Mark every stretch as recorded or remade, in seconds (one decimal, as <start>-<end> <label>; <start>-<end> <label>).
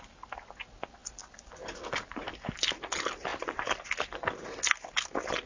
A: 0.0-1.0 recorded; 1.0-2.8 remade; 2.8-3.3 recorded; 3.3-3.8 remade; 3.8-5.5 recorded